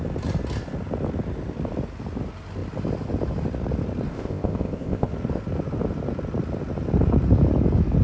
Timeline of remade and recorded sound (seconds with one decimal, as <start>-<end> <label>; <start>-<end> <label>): 0.0-4.1 recorded; 4.1-5.1 remade; 5.1-8.0 recorded